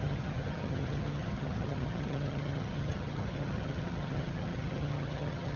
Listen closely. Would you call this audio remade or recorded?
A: remade